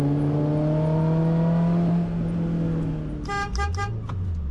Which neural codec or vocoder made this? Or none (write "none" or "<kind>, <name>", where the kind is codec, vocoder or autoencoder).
none